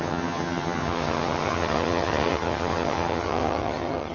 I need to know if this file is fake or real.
fake